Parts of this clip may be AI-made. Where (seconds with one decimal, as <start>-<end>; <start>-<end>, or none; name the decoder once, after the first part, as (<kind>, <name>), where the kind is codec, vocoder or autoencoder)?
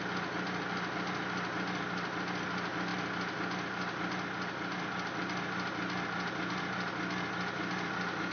none